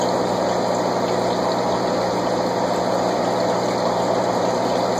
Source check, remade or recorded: recorded